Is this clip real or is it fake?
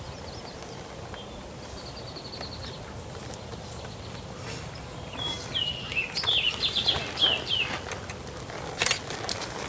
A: real